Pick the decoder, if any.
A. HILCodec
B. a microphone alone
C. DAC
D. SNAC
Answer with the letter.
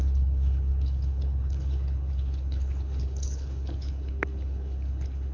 A